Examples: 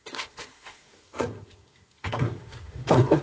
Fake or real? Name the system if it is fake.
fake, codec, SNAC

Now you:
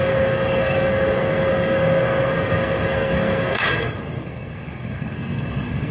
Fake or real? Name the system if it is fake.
fake, codec, SNAC